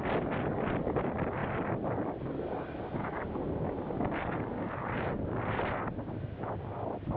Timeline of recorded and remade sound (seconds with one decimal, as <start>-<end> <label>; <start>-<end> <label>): 0.0-7.2 recorded